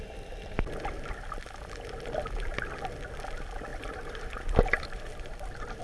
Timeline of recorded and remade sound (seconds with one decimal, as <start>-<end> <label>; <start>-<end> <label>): 0.0-3.7 recorded; 3.7-5.8 remade